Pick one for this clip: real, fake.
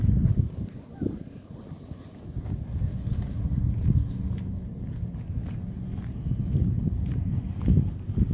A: real